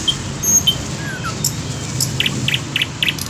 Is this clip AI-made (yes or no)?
no